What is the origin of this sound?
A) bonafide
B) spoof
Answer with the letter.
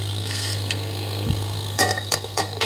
B